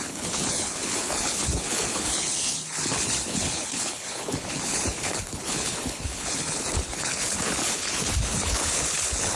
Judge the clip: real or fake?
fake